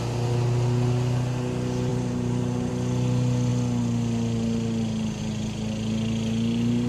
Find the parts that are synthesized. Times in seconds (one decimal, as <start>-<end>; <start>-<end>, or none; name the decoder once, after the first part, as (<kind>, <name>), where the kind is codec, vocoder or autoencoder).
1.9-2.7 (vocoder, BigVGAN v2)